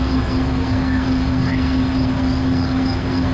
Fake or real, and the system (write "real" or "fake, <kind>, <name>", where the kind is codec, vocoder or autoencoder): fake, codec, SNAC